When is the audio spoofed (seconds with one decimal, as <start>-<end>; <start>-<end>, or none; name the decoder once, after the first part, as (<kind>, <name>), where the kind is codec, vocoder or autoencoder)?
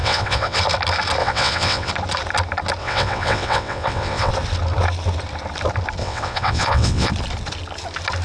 0.0-0.6 (vocoder, WaveNeXt); 1.2-1.9; 2.8-4.3; 6.0-7.1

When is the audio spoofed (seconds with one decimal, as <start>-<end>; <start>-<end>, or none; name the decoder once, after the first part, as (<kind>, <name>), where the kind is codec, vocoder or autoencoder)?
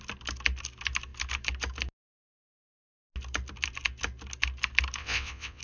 5.0-5.6 (vocoder, WaveNeXt)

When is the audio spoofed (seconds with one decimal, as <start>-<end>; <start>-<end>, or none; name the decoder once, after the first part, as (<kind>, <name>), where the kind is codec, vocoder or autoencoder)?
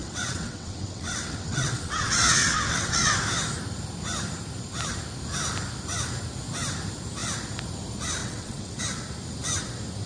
0.0-3.1 (vocoder, WaveNeXt); 8.2-8.8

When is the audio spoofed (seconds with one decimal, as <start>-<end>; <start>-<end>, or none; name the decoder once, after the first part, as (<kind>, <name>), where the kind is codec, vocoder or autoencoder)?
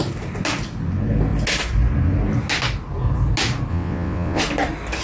3.7-4.4 (vocoder, WaveNeXt)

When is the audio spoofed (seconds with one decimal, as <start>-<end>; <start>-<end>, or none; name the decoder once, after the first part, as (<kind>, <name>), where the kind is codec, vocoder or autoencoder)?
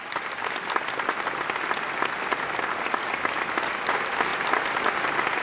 none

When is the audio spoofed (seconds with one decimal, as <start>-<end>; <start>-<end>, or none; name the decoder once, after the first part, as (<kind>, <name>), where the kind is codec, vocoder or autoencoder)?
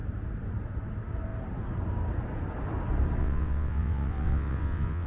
3.2-5.1 (vocoder, WaveNeXt)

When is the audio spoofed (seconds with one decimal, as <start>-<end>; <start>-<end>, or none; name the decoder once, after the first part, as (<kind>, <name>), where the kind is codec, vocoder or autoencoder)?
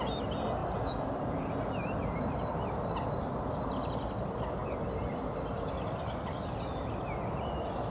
none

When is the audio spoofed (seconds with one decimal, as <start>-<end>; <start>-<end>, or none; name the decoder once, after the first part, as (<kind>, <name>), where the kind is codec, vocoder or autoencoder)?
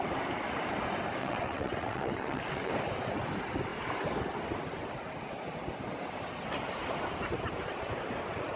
1.2-2.7 (vocoder, WaveNeXt)